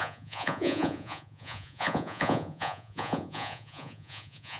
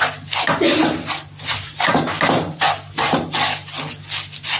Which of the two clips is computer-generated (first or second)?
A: first